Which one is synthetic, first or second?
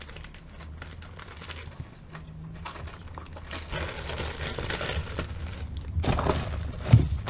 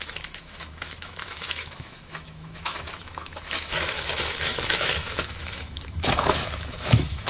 second